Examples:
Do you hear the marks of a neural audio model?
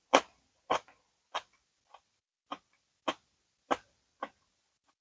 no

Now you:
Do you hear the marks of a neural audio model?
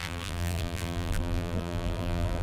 yes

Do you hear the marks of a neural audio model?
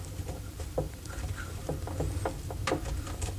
yes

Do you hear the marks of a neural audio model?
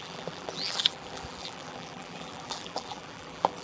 yes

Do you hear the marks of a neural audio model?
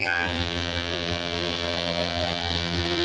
yes